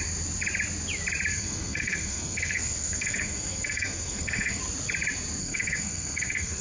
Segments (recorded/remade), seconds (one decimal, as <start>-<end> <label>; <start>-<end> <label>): 0.0-1.3 recorded; 1.3-4.6 remade; 4.6-5.4 recorded; 5.4-6.6 remade